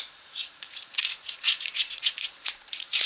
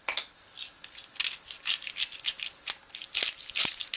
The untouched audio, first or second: second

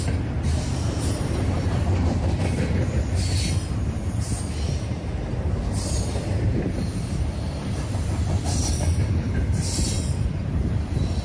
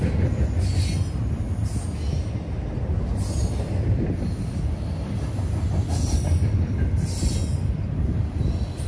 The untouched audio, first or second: second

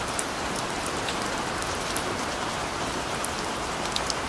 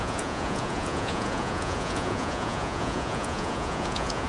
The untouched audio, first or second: first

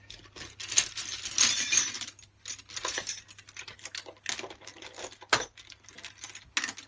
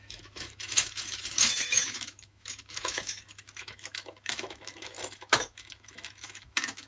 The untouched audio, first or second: first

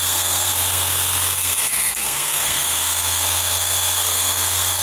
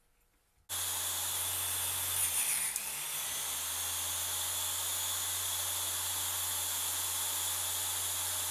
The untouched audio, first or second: second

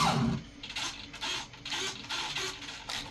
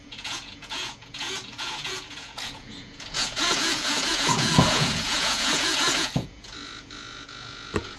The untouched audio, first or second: first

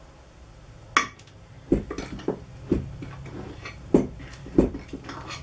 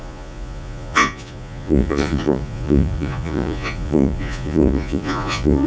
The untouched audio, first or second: first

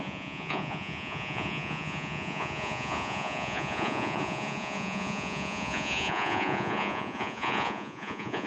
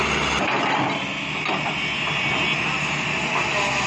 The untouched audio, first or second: second